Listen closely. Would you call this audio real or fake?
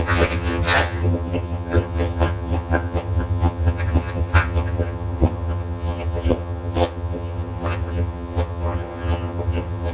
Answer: fake